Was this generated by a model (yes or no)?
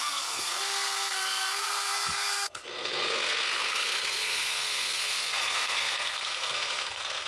yes